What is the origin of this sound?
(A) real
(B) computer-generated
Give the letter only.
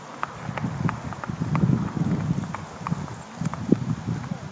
A